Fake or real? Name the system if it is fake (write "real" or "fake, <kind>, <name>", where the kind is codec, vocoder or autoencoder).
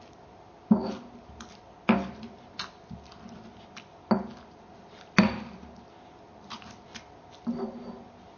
real